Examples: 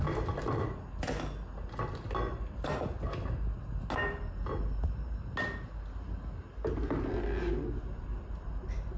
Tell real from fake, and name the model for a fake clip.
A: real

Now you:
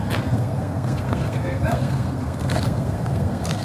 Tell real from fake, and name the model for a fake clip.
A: fake, codec, SNAC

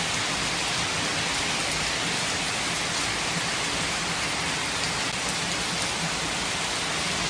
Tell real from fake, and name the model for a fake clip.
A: real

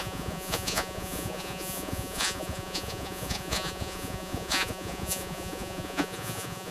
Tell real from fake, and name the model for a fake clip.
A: fake, vocoder, Vocos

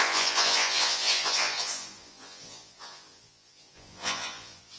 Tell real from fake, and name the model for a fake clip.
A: fake, vocoder, Vocos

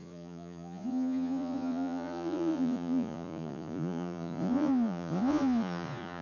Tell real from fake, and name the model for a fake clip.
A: fake, vocoder, Vocos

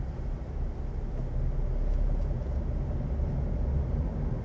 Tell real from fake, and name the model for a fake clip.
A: real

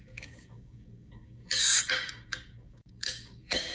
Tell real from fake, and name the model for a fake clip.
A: fake, codec, DAC